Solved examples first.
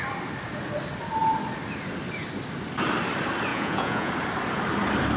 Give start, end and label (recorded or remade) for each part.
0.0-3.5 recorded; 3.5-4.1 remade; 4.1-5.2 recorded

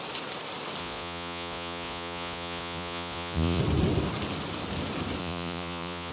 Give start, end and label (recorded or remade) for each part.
0.0-0.8 recorded; 0.8-3.6 remade; 3.6-5.2 recorded; 5.2-6.1 remade

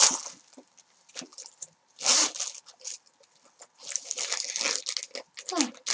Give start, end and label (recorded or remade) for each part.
0.0-5.9 recorded

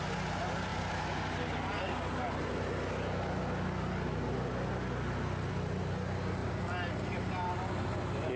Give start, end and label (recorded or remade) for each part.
0.0-8.4 recorded

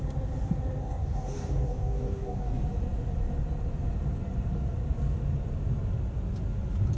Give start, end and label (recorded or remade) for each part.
0.0-0.8 recorded; 0.8-2.5 remade; 2.5-7.0 recorded

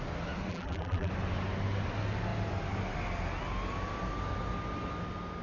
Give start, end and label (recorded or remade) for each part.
0.0-0.5 recorded; 0.5-1.1 remade; 1.1-5.4 recorded

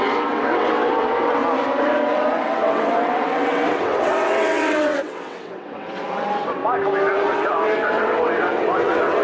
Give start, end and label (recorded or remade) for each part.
0.0-1.4 remade; 1.4-2.1 recorded; 2.1-6.6 remade; 6.6-7.1 recorded; 7.1-9.2 remade